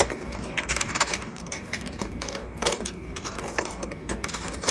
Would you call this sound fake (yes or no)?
yes